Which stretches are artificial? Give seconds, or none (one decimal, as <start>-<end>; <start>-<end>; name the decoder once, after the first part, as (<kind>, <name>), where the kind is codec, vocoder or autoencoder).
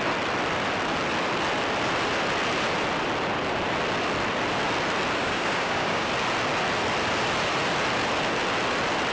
5.2-6.1 (codec, DAC)